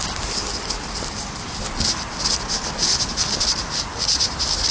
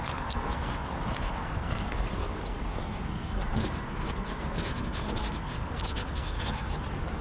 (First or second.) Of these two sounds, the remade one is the second